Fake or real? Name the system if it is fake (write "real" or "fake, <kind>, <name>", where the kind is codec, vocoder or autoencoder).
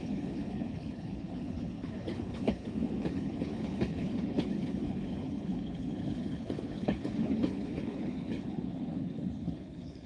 fake, codec, HILCodec